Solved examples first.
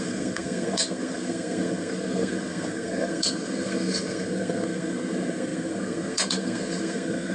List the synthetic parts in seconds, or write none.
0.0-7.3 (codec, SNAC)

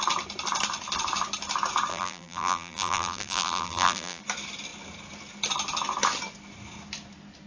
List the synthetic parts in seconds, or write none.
1.9-4.2 (vocoder, BigVGAN v2)

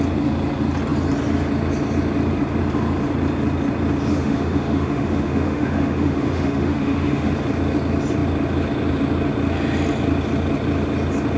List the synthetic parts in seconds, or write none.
4.1-7.3 (autoencoder, DAC-VAE)

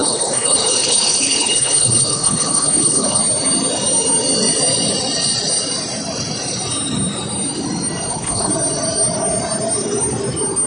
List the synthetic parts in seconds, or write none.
0.0-3.2 (codec, HILCodec); 8.1-8.5

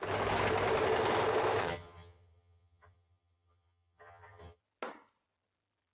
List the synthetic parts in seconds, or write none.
1.6-4.6 (vocoder, HiFi-GAN)

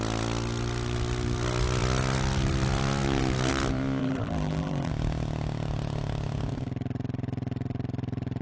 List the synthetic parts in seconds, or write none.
4.0-4.9 (vocoder, BigVGAN v2)

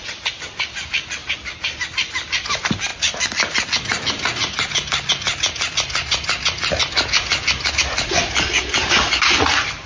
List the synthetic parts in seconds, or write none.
1.2-1.8 (vocoder, BigVGAN v2)

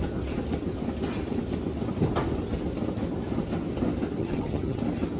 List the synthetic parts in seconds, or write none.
4.2-4.8 (vocoder, HiFi-GAN)